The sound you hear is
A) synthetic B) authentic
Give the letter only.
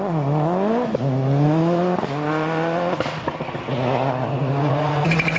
B